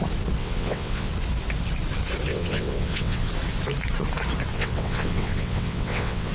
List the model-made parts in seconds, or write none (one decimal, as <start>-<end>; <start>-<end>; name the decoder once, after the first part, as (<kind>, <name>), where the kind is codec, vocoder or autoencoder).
0.4-1.1 (vocoder, WaveNeXt); 2.3-3.3; 4.5-6.3